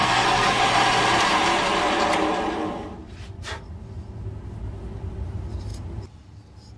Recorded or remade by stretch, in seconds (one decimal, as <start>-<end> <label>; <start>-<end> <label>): 0.0-0.6 remade; 0.6-6.8 recorded